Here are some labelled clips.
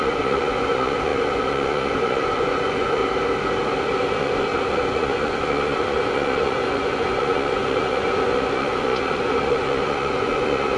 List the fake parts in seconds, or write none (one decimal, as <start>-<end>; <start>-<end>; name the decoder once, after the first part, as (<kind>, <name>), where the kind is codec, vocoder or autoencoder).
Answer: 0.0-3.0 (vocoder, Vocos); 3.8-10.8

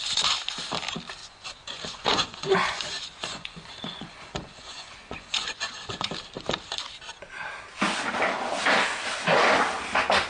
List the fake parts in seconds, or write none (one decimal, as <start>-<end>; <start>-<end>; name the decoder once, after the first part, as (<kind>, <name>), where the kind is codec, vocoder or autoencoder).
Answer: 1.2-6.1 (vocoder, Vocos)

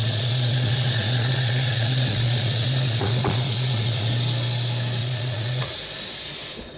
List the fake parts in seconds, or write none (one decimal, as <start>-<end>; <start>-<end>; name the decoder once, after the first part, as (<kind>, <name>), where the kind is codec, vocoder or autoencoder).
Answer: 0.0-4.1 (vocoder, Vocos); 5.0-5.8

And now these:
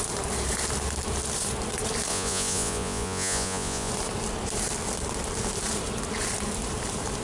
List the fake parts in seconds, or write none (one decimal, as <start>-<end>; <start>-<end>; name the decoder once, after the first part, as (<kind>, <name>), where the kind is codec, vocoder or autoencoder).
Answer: 2.1-3.9 (vocoder, Vocos)

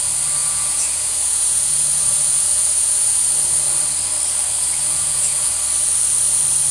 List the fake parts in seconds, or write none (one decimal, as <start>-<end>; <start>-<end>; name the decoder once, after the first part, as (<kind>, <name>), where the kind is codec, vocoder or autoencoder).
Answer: 0.4-3.2 (vocoder, Vocos); 4.8-5.5

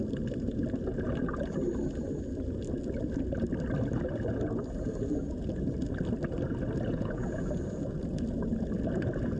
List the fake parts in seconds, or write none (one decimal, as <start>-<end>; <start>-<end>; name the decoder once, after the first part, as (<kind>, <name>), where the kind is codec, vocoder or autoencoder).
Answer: 6.9-7.5 (vocoder, Vocos)

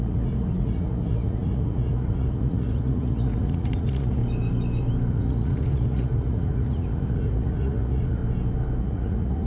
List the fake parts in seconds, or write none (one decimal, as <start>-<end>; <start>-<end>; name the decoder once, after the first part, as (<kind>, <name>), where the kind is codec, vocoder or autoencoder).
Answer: 0.0-4.2 (vocoder, Vocos); 5.1-8.2; 8.8-9.5